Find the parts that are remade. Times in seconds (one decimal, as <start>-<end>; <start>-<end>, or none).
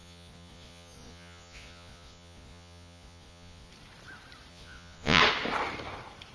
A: 0.0-3.7; 4.5-5.2